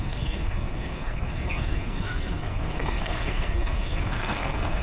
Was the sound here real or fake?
fake